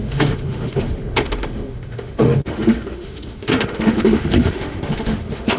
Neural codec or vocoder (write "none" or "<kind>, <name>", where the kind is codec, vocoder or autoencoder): autoencoder, DAC-VAE